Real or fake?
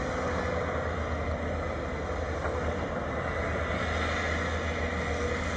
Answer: real